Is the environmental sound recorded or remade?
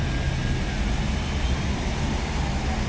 recorded